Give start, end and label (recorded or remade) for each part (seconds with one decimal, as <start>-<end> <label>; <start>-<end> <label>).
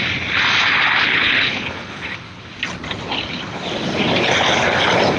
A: 0.0-1.1 recorded; 1.1-2.4 remade; 2.4-5.2 recorded